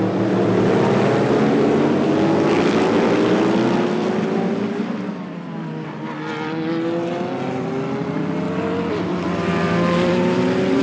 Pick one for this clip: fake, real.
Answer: real